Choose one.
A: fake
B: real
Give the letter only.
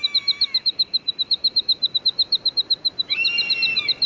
B